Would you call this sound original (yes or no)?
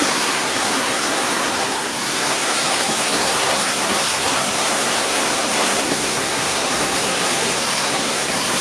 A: no